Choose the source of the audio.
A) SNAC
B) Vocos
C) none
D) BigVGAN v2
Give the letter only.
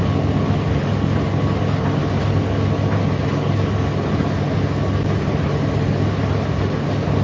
C